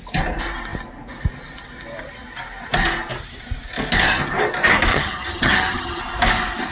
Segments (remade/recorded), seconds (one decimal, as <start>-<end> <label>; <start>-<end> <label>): 0.0-4.9 recorded; 4.9-6.0 remade; 6.0-6.7 recorded